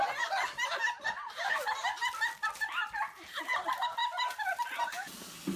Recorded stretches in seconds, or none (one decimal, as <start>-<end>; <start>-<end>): 0.0-5.6